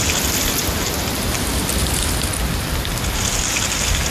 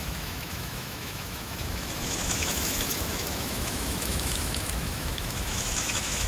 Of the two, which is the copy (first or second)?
second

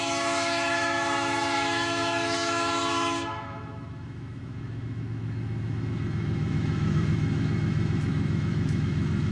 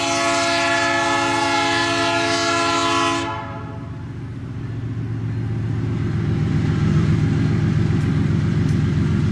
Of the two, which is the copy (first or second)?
first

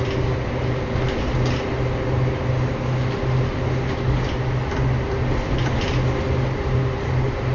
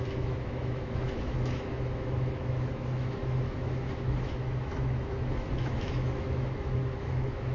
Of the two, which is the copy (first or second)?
second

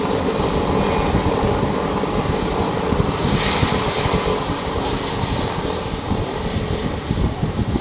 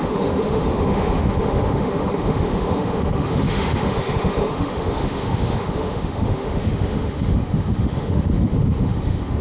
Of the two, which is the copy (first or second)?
second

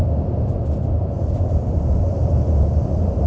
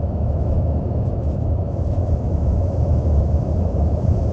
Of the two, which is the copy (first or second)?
second